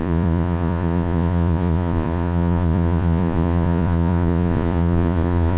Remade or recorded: remade